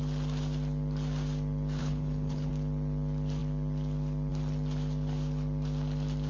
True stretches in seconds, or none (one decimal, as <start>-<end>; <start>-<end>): 0.0-1.8; 2.5-6.3